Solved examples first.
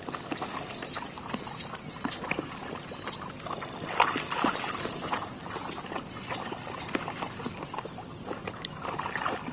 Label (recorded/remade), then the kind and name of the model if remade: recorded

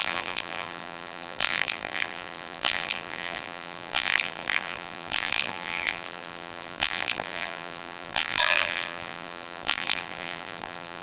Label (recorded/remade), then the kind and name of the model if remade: remade, vocoder, BigVGAN v2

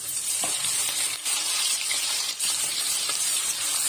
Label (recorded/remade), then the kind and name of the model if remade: remade, vocoder, BigVGAN v2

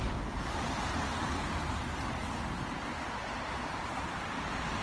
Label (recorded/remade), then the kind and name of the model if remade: remade, vocoder, BigVGAN v2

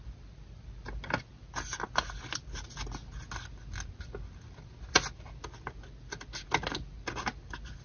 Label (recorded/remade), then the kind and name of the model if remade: recorded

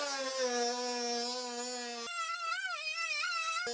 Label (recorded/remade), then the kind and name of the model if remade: recorded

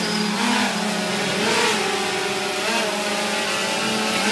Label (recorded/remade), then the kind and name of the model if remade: recorded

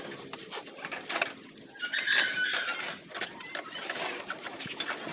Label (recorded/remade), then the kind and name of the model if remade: recorded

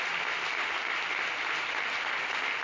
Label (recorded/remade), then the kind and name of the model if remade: recorded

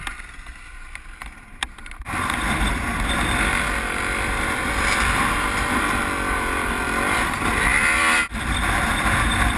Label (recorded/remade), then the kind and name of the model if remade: remade, vocoder, BigVGAN v2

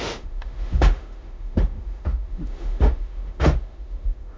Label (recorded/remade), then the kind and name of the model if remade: remade, autoencoder, DAC-VAE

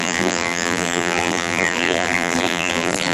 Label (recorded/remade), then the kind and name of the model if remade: remade, vocoder, BigVGAN v2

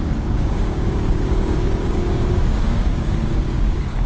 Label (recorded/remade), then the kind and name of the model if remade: remade, codec, DAC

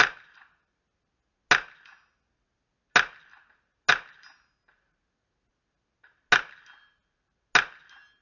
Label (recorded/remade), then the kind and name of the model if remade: recorded